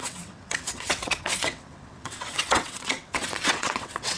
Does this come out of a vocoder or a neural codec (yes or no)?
yes